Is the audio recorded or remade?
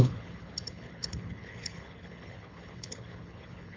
remade